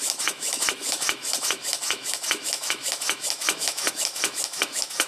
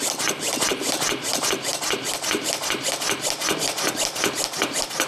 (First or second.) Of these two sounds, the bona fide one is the second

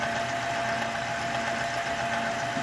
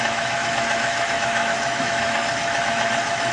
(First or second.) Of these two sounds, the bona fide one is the first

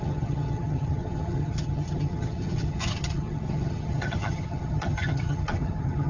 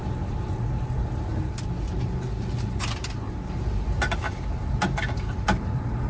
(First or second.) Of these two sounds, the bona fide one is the second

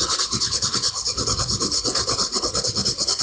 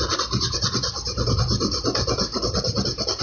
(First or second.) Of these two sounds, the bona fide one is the second